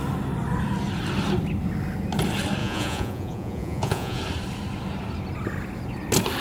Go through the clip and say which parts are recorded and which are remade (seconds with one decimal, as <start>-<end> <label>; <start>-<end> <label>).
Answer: 0.0-2.6 recorded; 2.6-4.2 remade; 4.2-6.4 recorded